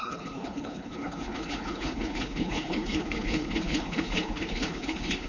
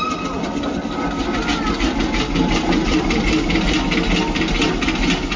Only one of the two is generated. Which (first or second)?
first